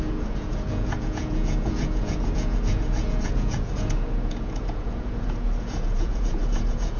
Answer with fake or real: fake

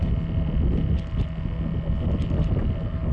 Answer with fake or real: real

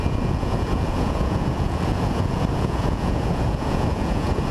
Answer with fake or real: fake